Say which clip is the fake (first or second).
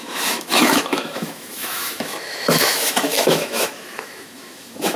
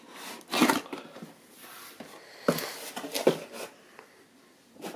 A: first